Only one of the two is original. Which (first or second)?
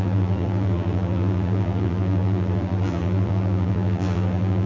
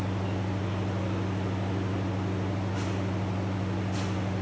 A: second